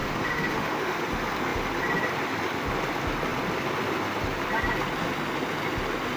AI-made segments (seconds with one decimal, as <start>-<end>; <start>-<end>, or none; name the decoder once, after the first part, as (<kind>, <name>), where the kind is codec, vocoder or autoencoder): 0.0-1.0 (autoencoder, DAC-VAE)